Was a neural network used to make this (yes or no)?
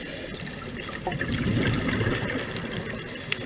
no